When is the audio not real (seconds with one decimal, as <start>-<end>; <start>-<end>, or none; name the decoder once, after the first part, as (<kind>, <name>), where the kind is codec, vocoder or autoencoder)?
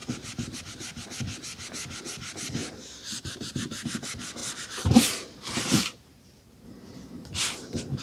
0.0-0.6 (vocoder, BigVGAN v2); 2.6-3.5; 4.4-8.0